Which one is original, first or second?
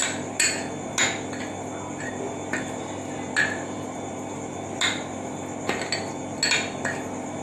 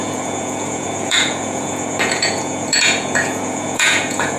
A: first